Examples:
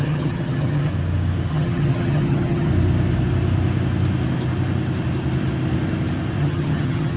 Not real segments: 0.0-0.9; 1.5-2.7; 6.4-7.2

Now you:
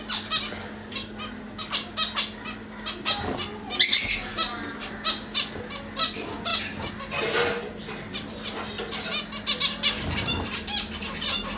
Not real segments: none

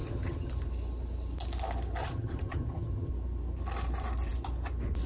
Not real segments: 0.0-0.5; 2.0-3.1

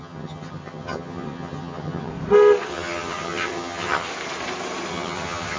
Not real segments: 0.0-2.1; 2.7-4.1; 4.9-5.6